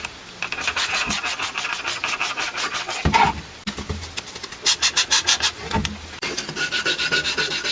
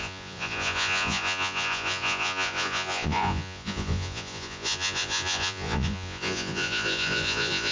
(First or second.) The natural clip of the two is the first